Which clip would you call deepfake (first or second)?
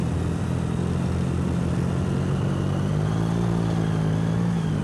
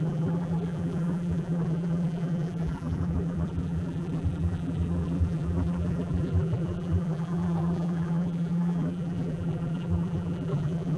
second